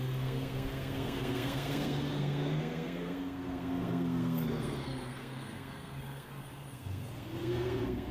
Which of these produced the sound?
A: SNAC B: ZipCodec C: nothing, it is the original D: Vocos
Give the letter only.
A